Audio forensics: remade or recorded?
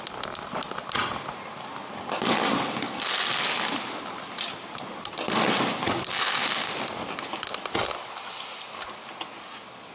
recorded